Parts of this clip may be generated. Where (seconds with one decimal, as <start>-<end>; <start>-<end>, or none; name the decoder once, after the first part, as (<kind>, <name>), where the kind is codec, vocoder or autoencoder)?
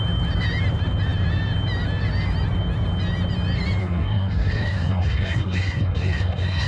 3.8-6.7 (codec, SNAC)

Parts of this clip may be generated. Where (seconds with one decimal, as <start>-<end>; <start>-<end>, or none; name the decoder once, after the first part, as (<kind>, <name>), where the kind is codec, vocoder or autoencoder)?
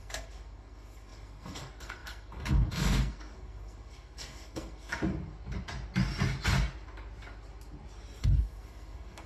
0.0-5.0 (codec, SNAC); 8.2-9.3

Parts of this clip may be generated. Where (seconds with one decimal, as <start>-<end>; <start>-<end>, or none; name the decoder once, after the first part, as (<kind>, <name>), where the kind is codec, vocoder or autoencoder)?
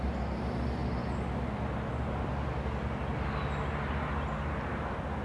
none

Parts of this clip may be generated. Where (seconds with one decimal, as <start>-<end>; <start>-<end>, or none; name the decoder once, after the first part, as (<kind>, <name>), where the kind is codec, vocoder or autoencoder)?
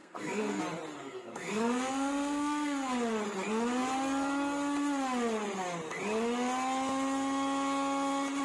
0.0-0.6 (codec, SNAC); 1.0-2.9